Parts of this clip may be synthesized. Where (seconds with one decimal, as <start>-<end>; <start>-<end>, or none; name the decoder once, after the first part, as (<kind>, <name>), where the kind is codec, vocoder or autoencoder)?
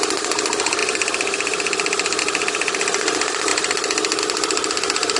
0.0-0.8 (vocoder, BigVGAN v2); 2.2-3.5; 4.2-5.2